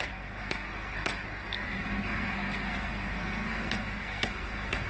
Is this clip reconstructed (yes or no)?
yes